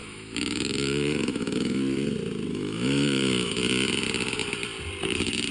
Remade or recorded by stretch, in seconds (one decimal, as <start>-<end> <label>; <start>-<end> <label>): 0.0-1.8 remade; 1.8-2.5 recorded; 2.5-3.6 remade; 3.6-5.5 recorded